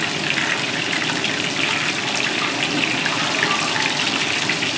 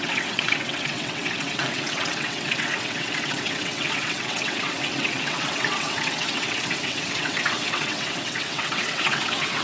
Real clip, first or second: first